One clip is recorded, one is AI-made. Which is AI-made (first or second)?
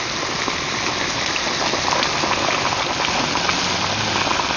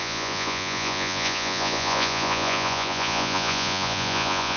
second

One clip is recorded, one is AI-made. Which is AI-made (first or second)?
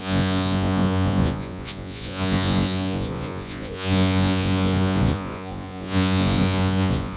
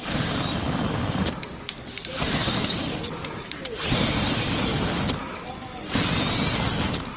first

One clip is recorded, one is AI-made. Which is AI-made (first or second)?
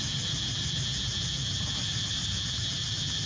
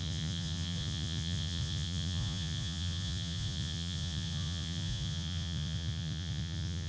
second